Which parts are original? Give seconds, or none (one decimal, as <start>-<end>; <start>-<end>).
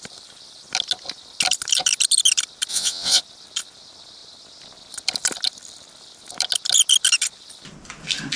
0.0-2.7; 3.2-8.4